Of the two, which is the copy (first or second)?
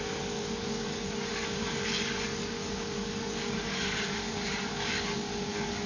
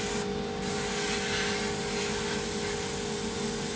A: first